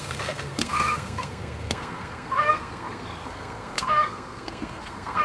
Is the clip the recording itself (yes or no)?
no